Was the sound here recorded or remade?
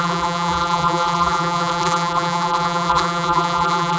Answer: remade